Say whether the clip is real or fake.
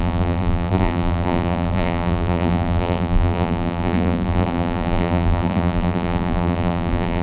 fake